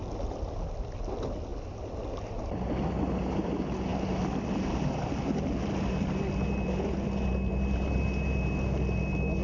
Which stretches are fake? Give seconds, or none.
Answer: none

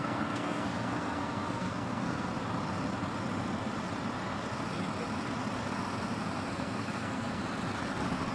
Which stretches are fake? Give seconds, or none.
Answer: 0.0-2.3 (codec, SNAC); 6.5-7.4

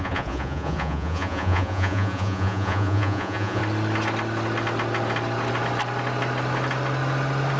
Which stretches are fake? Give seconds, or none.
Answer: 0.0-3.6 (vocoder, Vocos)

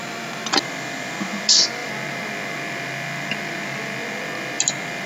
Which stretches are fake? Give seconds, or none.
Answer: none

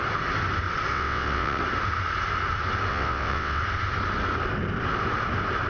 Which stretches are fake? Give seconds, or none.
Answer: 0.9-1.6 (vocoder, WaveNeXt); 2.9-3.6

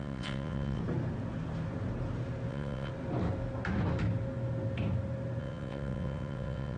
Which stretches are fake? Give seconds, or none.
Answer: 0.0-0.8 (vocoder, WaveNeXt); 2.5-2.9; 5.4-6.8

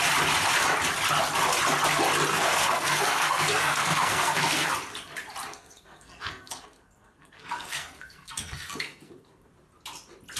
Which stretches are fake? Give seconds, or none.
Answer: 2.3-4.7 (codec, SNAC); 5.5-9.5